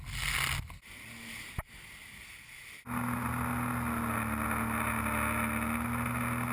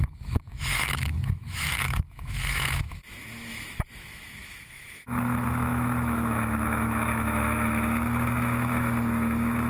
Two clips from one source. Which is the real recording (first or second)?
first